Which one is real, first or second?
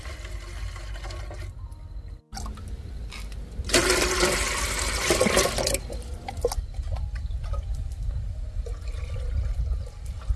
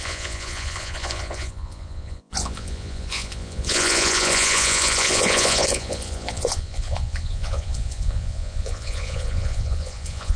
first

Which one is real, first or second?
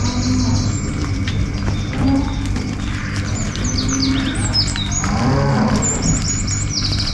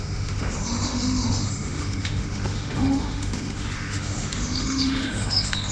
first